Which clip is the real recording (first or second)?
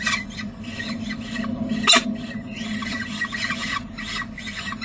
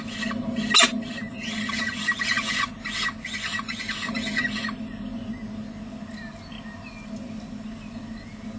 second